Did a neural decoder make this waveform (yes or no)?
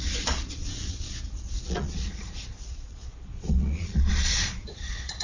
yes